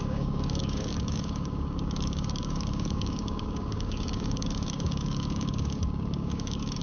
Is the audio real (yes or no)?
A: no